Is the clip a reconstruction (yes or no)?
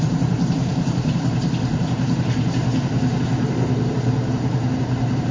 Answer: yes